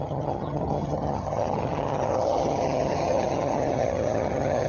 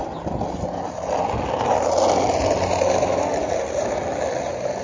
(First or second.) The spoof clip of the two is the first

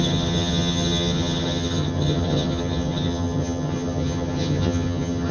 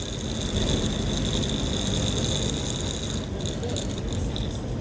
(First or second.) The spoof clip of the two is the first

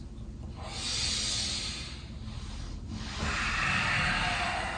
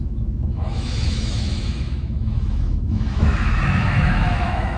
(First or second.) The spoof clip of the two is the second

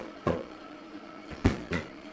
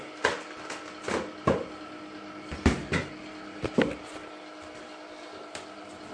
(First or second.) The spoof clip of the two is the first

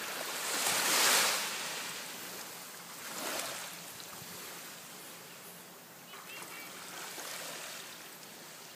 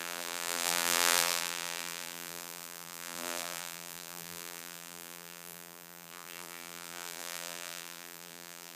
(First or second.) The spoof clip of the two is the second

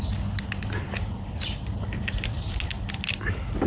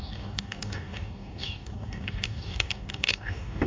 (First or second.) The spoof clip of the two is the second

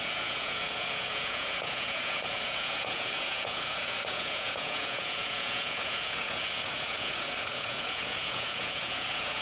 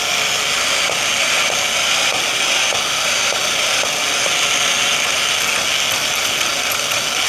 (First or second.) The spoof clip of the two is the first